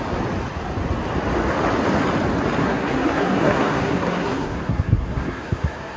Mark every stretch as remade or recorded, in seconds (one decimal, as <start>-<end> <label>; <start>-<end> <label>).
0.0-2.6 recorded; 2.6-6.0 remade